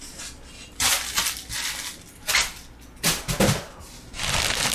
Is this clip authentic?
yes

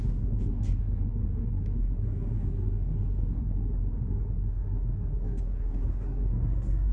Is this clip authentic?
no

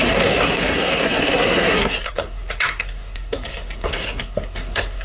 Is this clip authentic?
no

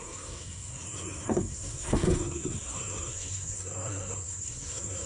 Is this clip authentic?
no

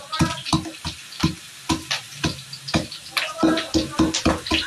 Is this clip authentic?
yes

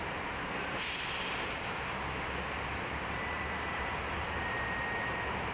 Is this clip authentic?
yes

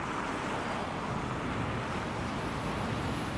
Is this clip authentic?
yes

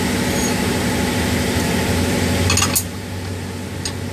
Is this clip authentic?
yes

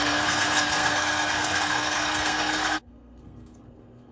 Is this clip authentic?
no